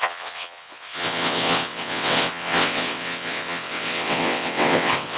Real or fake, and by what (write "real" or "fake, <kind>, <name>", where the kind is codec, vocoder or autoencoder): fake, vocoder, WaveNeXt